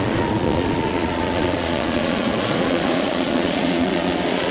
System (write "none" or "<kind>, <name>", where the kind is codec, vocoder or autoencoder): vocoder, Vocos